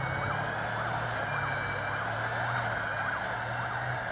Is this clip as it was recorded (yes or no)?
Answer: yes